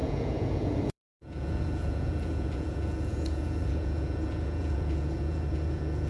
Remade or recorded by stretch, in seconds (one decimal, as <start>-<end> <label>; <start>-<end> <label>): 0.0-6.1 remade